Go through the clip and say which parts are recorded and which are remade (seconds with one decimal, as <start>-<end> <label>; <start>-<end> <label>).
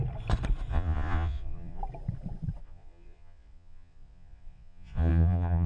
0.0-0.7 recorded; 0.7-1.8 remade; 1.8-2.6 recorded; 2.6-5.7 remade